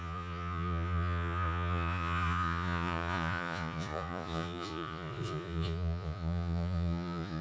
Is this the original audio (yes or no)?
no